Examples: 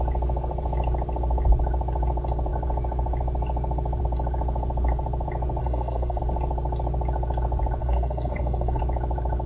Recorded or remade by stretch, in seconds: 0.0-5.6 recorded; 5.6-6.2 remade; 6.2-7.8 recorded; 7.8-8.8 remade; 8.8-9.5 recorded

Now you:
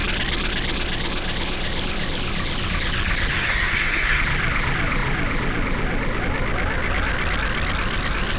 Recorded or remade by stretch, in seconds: 0.0-3.3 recorded; 3.3-4.2 remade; 4.2-8.4 recorded

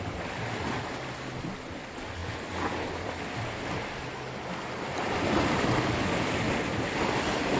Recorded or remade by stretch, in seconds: 0.0-7.6 recorded

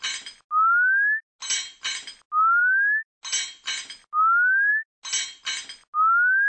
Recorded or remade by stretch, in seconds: 0.0-6.5 recorded